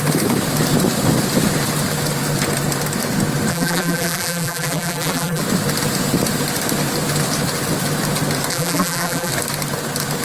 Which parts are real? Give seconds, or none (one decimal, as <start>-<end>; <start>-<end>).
0.0-3.5; 5.4-8.5; 9.3-10.2